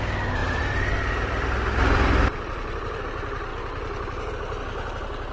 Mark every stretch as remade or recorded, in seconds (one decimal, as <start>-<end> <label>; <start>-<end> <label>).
0.0-0.4 recorded; 0.4-3.0 remade; 3.0-5.3 recorded